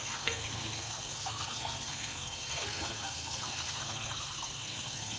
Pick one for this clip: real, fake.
fake